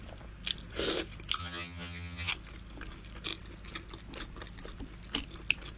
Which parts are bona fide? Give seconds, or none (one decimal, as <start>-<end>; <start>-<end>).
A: 0.0-1.4; 2.3-5.8